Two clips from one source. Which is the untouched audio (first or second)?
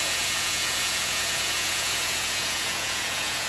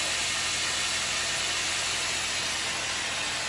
second